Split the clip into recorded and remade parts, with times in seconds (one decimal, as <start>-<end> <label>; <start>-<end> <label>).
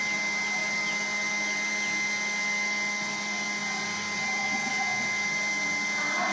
0.0-6.3 recorded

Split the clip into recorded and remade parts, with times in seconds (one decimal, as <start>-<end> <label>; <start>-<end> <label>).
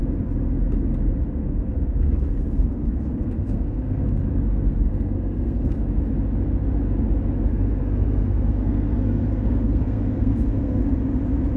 0.0-1.4 recorded; 1.4-5.8 remade; 5.8-7.5 recorded; 7.5-10.8 remade; 10.8-11.6 recorded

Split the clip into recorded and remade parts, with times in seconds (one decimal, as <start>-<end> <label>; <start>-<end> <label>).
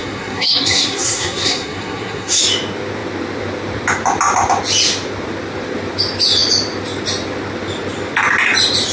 0.0-2.4 remade; 2.4-8.9 recorded